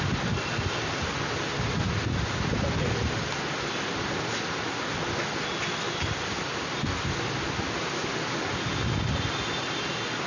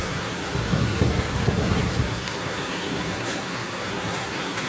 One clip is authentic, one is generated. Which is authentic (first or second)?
first